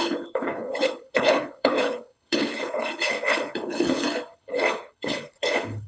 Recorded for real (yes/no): no